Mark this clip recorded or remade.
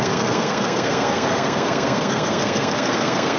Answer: remade